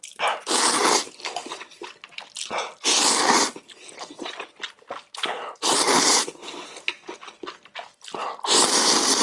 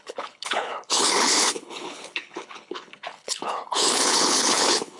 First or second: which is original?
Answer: first